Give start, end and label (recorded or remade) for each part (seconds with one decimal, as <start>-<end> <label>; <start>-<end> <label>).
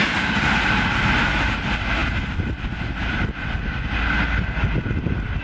0.0-5.4 recorded